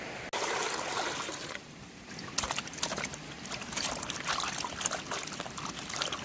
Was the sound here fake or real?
real